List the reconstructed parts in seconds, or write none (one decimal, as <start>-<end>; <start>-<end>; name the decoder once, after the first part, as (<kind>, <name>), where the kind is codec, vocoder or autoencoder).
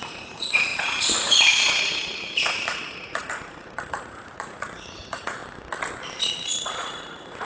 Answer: 0.0-5.4 (vocoder, Vocos); 6.2-7.4